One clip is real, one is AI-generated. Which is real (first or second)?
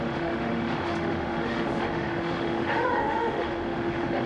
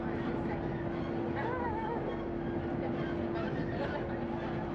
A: second